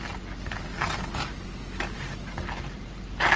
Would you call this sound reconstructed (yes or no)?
no